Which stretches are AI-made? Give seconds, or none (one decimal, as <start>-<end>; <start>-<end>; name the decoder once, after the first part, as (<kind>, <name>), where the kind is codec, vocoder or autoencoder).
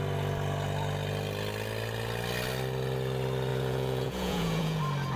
3.5-4.8 (vocoder, Vocos)